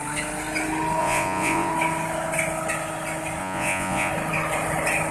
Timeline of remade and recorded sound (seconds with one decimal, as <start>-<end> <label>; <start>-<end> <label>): 0.0-1.0 recorded; 1.0-1.7 remade; 1.7-3.4 recorded; 3.4-4.1 remade; 4.1-5.1 recorded